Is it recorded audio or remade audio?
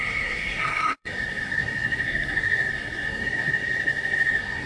remade